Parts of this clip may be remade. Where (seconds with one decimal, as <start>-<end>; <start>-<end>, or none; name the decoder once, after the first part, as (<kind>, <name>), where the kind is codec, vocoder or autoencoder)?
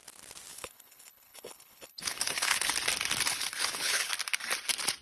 0.5-2.7 (codec, HILCodec); 3.3-4.1